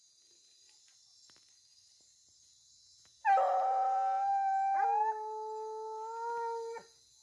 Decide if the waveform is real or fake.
real